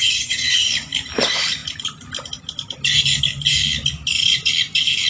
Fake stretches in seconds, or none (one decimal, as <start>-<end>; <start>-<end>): 0.0-0.7